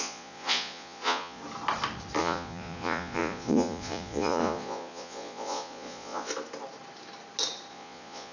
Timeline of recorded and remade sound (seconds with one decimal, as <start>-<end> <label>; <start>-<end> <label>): 0.0-1.4 remade; 1.4-2.2 recorded; 2.2-6.3 remade; 6.3-7.7 recorded; 7.7-8.3 remade